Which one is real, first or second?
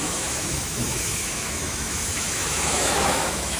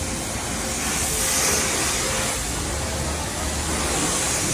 second